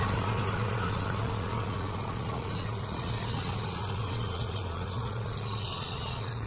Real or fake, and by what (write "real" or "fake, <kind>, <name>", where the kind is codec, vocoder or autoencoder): fake, vocoder, Vocos